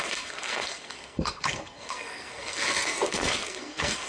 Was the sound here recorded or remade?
remade